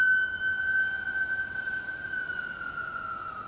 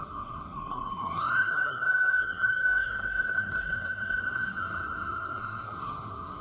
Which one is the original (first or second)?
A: first